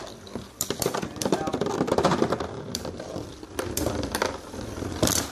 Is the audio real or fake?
fake